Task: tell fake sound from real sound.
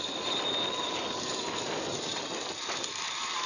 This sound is real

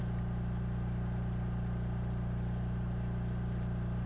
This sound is real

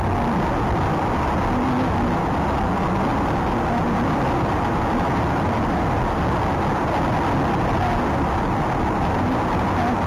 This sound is real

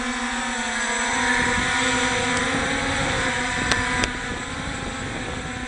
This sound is real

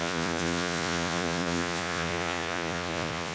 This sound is fake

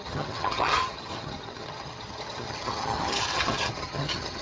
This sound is fake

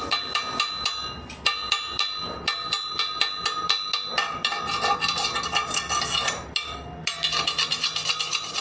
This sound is real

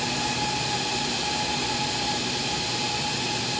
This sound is real